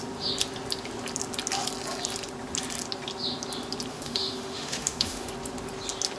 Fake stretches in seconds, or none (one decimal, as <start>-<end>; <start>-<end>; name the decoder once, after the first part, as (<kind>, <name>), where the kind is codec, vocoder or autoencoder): 3.9-5.3 (autoencoder, DAC-VAE)